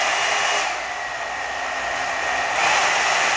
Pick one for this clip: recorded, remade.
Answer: recorded